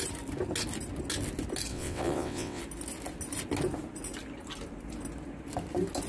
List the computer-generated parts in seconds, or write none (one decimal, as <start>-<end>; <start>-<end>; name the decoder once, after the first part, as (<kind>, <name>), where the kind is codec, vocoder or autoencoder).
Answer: 1.7-2.6 (vocoder, WaveNeXt)

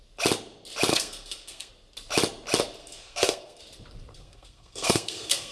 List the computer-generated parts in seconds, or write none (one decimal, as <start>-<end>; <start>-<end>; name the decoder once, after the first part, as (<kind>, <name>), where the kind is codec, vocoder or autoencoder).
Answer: 0.9-1.7 (codec, SNAC); 2.8-3.6; 4.1-5.5

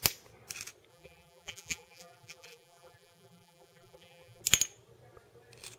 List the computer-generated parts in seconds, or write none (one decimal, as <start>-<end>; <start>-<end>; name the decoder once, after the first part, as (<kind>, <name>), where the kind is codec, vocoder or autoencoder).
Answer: 0.9-4.4 (vocoder, BigVGAN v2)

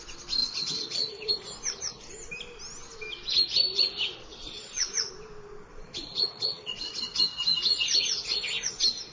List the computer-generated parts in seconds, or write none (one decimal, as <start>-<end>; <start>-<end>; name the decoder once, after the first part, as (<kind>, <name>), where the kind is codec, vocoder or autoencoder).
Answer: 0.4-1.3 (vocoder, Vocos); 4.3-5.1; 5.7-7.0